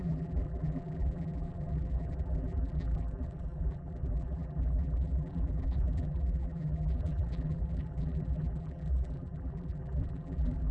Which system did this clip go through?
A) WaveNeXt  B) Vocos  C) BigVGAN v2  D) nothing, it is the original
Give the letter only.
C